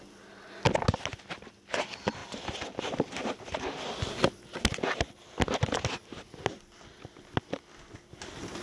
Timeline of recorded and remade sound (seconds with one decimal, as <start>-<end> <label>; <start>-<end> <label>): 0.0-8.6 recorded

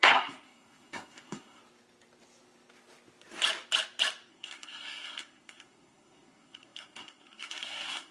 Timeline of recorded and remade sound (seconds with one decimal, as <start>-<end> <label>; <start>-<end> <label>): 0.0-1.6 remade; 1.6-4.3 recorded; 4.3-8.1 remade